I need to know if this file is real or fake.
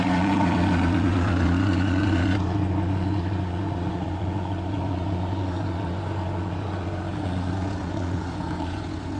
fake